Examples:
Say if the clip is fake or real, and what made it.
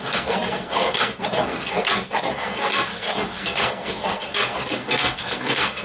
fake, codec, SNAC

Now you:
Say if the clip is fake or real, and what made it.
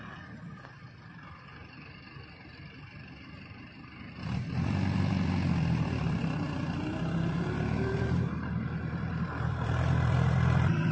fake, vocoder, BigVGAN v2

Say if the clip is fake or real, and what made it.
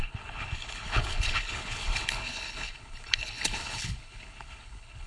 fake, codec, HILCodec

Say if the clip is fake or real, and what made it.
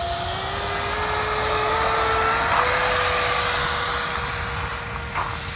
real